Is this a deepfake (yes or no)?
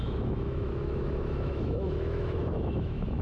yes